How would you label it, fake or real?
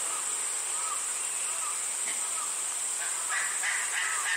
fake